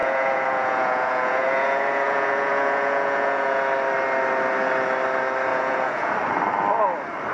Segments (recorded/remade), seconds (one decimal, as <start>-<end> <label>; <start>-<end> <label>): 0.0-3.6 remade; 3.6-5.5 recorded; 5.5-6.1 remade; 6.1-7.3 recorded